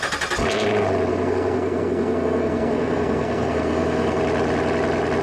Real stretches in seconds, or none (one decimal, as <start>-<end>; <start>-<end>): 0.0-1.1; 4.2-5.2